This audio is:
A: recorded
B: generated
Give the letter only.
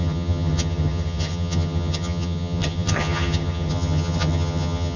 B